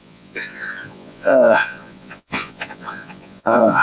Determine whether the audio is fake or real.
fake